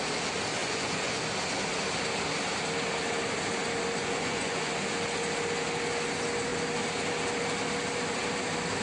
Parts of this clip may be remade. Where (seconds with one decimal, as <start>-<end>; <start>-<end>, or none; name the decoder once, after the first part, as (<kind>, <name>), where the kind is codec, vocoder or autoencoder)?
0.6-1.2 (vocoder, Vocos); 4.0-4.7